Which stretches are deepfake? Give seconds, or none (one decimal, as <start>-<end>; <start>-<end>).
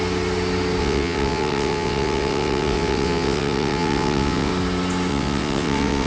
0.8-4.5; 5.1-6.1